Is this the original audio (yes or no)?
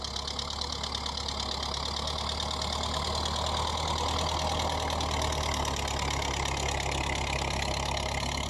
yes